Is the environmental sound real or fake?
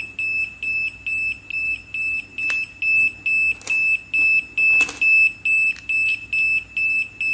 real